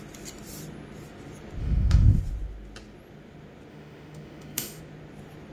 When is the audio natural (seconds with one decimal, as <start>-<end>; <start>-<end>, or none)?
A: 0.0-1.6; 2.2-3.7; 4.8-5.5